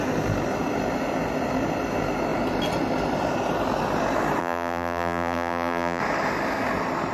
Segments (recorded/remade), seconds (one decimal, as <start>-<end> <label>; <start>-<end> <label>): 0.0-4.4 recorded; 4.4-6.0 remade; 6.0-7.1 recorded